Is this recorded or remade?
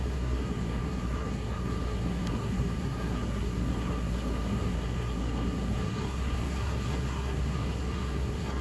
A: remade